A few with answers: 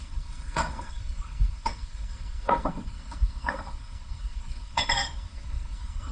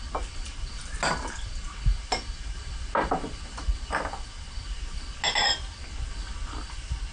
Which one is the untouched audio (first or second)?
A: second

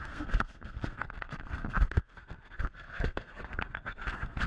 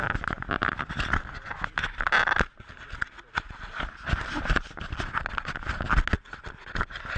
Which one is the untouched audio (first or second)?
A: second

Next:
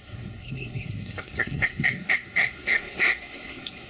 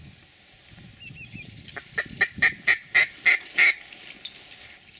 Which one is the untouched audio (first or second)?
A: second